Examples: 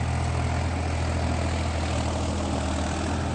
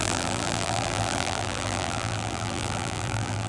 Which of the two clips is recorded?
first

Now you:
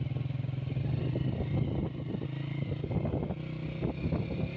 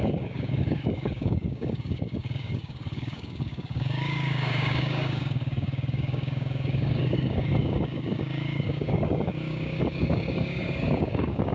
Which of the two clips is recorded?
first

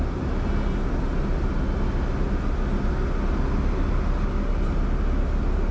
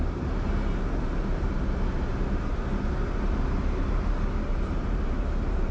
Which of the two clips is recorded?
first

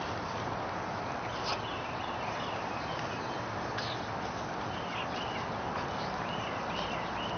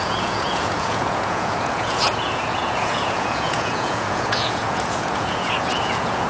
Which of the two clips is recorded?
first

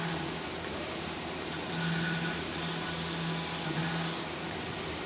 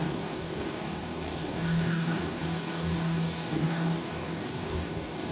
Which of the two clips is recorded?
first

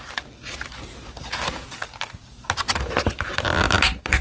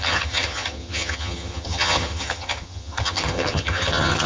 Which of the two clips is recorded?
first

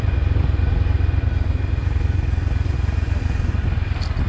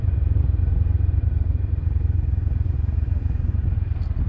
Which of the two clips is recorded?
first